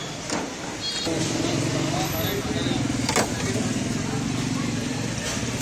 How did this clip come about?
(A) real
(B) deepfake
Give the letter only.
A